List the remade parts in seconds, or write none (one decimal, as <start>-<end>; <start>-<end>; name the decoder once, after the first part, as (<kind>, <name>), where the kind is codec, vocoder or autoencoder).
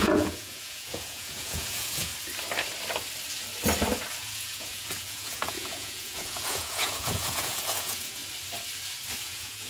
0.0-2.1 (vocoder, Vocos); 4.2-8.2; 9.2-9.7